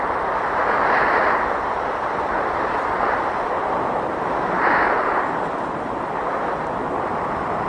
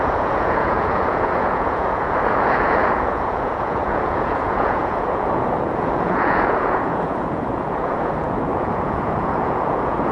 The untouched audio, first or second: first